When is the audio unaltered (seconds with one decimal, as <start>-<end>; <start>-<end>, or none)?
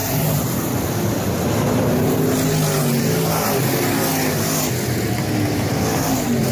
1.2-6.5